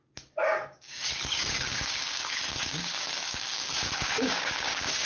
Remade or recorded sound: remade